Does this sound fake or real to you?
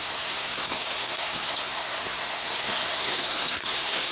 fake